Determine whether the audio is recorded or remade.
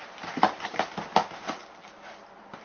recorded